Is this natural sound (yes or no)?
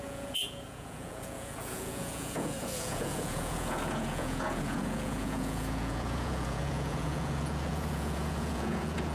no